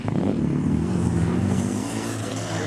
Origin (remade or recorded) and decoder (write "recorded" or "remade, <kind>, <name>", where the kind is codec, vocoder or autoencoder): remade, codec, SNAC